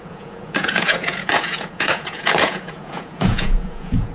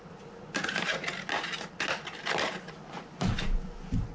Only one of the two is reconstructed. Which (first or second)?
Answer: first